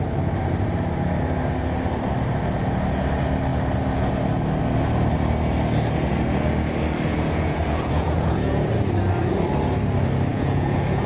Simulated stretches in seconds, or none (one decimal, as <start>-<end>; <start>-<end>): 7.1-8.7; 10.3-11.1

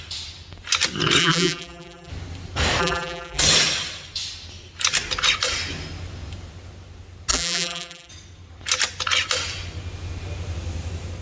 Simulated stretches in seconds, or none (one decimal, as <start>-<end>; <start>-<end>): 1.2-2.1; 2.8-3.4; 7.3-8.1

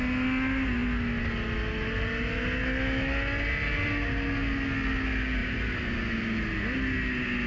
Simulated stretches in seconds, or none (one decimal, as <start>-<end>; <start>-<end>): 5.4-5.9

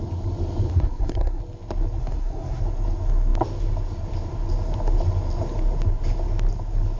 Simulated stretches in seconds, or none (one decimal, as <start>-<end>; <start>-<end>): 0.7-1.4; 2.0-2.6